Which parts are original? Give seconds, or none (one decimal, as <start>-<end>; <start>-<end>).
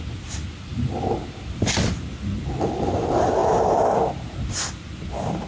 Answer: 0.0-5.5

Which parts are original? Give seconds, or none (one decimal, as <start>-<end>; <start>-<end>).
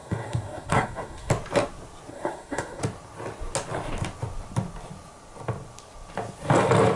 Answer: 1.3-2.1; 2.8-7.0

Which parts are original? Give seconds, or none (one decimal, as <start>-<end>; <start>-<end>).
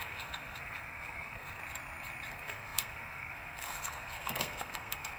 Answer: 1.6-2.3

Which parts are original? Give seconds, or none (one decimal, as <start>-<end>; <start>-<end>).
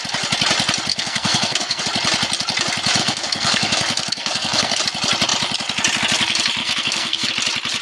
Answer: 0.0-0.9; 1.8-3.0; 4.8-6.6; 7.3-7.8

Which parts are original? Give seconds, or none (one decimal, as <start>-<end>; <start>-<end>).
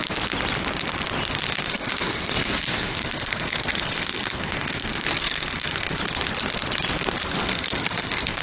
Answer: 0.0-1.5; 6.0-7.5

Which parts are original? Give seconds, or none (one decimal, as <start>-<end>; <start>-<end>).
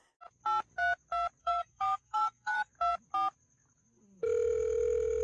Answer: 0.0-1.4; 2.7-5.2